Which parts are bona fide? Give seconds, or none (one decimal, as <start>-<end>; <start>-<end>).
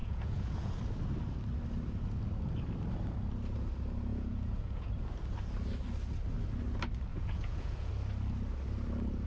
0.7-4.1; 4.9-7.1; 7.9-9.3